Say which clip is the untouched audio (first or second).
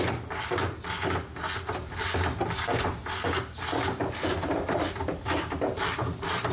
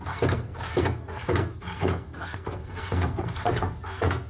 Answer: first